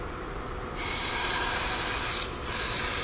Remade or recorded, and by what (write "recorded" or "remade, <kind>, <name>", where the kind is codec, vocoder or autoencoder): recorded